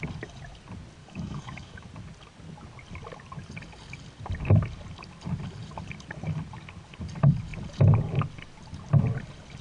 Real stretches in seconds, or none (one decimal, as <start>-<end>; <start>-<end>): 0.0-1.0; 1.8-9.6